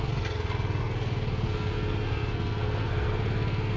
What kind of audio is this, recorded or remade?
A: remade